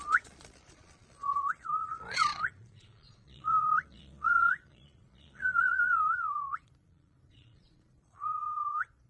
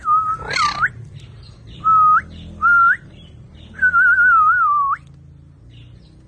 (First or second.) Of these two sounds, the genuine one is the second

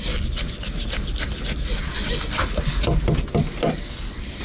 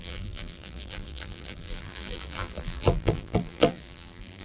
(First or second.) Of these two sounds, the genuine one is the first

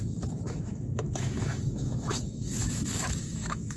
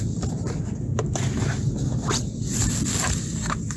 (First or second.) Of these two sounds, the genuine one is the second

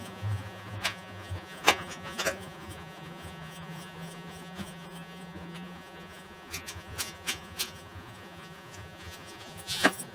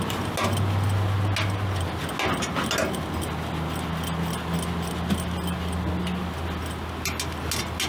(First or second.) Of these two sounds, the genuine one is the second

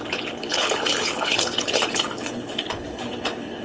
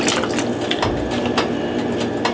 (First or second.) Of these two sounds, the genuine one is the second